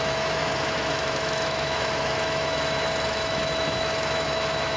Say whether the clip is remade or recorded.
remade